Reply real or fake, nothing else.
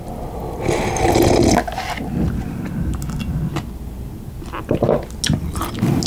real